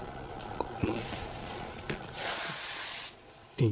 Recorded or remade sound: remade